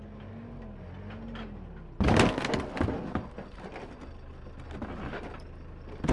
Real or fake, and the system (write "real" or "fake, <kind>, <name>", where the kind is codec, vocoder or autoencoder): real